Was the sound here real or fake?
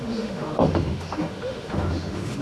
fake